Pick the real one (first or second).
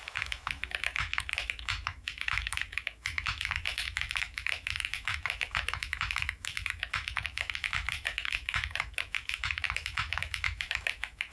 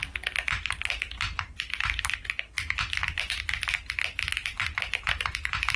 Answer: second